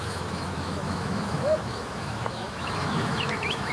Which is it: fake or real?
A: fake